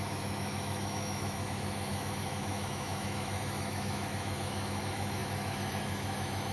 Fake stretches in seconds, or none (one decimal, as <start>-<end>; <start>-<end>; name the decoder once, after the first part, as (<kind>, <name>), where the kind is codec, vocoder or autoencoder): 0.0-6.5 (autoencoder, DAC-VAE)